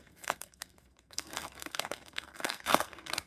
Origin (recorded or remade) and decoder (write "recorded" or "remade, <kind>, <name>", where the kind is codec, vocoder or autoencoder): remade, codec, SNAC